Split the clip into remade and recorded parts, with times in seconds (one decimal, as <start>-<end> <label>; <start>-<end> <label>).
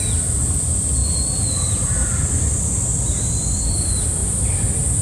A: 0.0-5.0 recorded